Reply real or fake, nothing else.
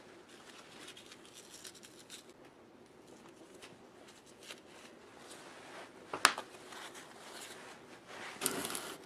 real